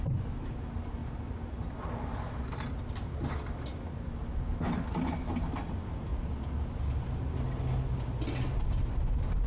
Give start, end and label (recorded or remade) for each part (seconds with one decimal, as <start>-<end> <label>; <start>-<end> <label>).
0.0-9.5 recorded